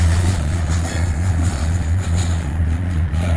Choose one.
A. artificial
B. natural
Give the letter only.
A